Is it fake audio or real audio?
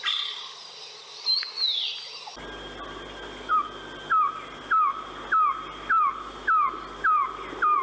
real